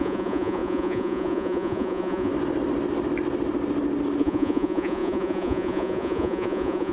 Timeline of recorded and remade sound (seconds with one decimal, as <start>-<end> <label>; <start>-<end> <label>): 0.0-2.3 remade; 2.3-4.2 recorded; 4.2-6.9 remade